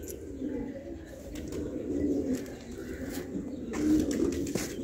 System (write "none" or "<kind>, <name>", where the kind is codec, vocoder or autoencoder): none